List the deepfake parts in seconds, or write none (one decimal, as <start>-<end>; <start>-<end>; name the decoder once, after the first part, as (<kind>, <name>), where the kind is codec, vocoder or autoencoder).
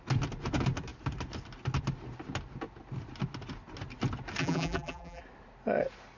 4.4-5.2 (vocoder, BigVGAN v2)